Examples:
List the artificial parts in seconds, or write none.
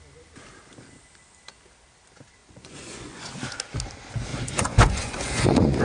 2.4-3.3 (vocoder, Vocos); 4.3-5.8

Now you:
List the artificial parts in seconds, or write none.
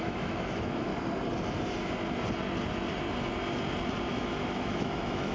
0.0-0.9 (autoencoder, DAC-VAE); 4.1-5.3